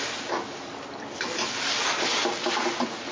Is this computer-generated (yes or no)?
no